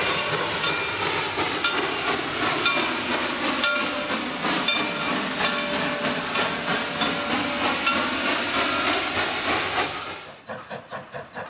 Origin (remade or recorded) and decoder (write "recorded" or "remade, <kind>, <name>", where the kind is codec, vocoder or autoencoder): recorded